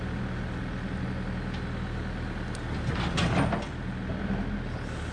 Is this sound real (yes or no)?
yes